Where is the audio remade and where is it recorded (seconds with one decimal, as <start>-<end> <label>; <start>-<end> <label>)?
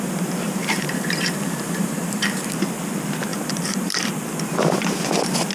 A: 0.0-0.6 recorded; 0.6-2.5 remade; 2.5-3.3 recorded; 3.3-4.1 remade; 4.1-5.5 recorded